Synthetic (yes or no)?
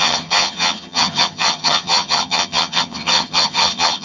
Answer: yes